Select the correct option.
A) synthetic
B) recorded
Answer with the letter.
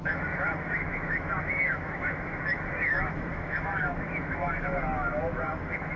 A